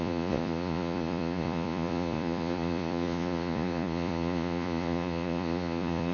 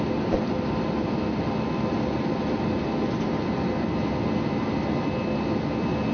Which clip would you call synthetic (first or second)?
first